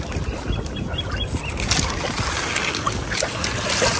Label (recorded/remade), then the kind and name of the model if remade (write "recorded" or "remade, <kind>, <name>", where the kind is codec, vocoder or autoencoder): recorded